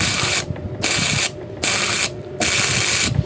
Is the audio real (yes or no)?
no